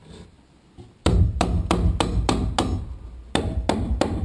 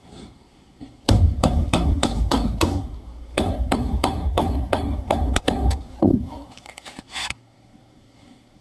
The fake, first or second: second